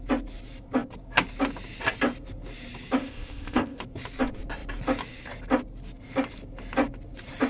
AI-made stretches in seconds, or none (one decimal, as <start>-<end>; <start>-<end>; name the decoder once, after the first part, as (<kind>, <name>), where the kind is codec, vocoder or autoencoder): 3.0-3.8 (codec, ZipCodec)